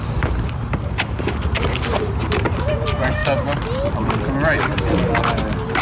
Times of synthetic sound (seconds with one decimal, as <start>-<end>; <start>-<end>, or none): 0.0-3.2